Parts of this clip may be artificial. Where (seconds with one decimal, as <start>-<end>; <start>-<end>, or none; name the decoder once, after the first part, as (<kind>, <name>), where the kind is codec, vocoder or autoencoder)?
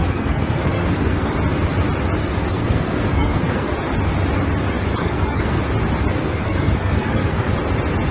0.0-1.3 (codec, SNAC); 2.2-3.7; 5.0-5.6; 6.2-7.5